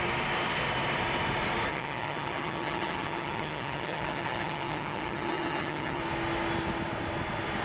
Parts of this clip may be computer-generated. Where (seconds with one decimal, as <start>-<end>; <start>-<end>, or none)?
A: 1.7-6.0